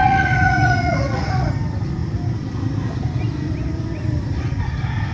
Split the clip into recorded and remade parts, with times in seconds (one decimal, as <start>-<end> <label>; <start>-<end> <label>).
0.0-1.5 remade; 1.5-5.1 recorded